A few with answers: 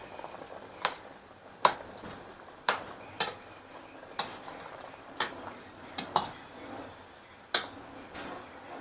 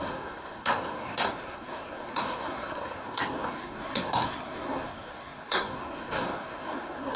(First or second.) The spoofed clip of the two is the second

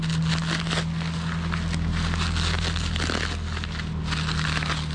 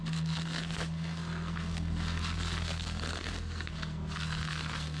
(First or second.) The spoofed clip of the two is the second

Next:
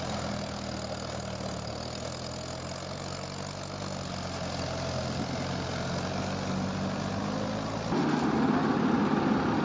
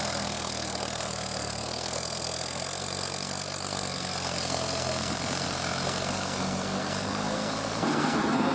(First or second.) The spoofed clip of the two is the second